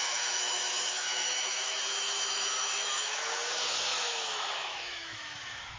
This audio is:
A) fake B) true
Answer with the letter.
A